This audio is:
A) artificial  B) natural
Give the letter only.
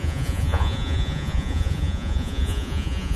A